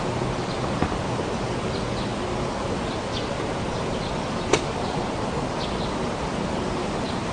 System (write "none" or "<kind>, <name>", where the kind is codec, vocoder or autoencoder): none